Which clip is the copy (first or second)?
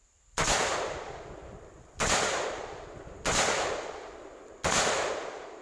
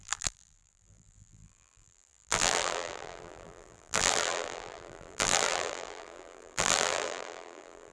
second